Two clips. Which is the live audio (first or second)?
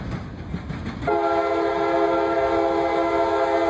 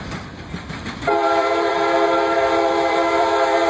first